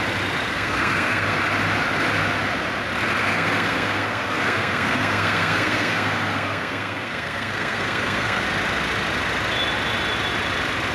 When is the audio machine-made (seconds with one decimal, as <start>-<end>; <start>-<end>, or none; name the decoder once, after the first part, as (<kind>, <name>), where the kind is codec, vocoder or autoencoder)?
0.5-1.4 (codec, SNAC); 3.2-8.4